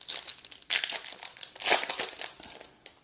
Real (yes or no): yes